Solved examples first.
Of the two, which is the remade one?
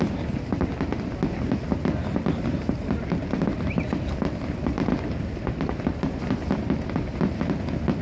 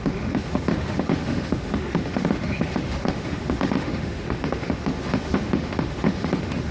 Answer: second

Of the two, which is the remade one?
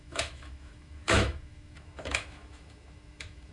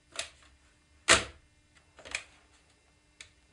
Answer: first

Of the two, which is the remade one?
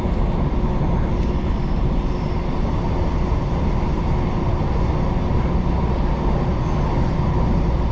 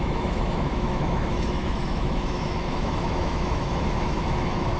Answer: second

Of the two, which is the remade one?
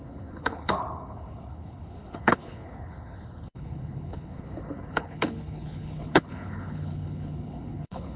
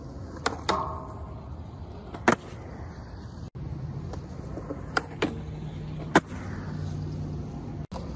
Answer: first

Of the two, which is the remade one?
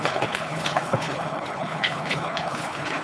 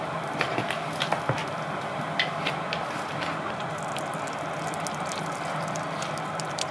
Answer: first